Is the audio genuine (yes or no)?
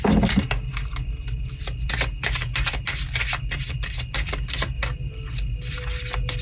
yes